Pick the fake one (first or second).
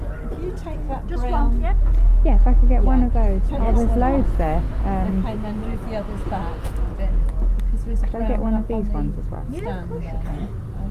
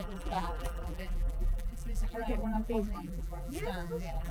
second